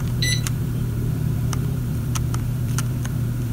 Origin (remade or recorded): remade